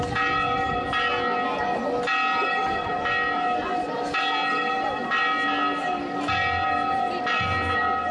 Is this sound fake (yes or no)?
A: no